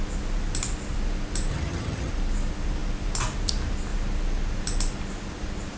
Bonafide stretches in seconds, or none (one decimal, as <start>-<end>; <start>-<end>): 0.0-1.5; 2.1-5.8

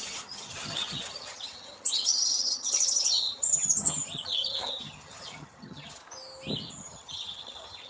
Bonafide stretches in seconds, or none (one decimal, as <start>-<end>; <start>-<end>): 6.0-6.7

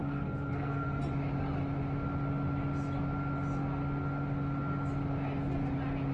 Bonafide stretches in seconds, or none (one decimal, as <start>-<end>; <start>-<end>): 1.0-6.1

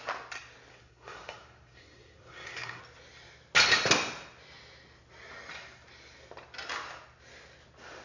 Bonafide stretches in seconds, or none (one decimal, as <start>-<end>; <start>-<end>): 0.0-0.7; 2.8-8.0

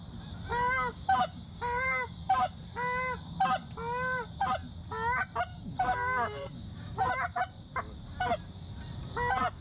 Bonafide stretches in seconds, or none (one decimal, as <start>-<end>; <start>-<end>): 0.0-0.5; 2.5-5.5; 7.1-9.6